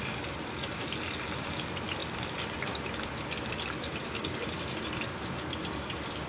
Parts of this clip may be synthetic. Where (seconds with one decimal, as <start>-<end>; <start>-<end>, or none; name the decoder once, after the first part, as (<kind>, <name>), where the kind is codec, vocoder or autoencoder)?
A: none